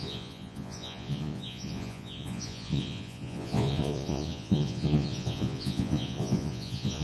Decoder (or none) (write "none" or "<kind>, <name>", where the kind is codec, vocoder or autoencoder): vocoder, Vocos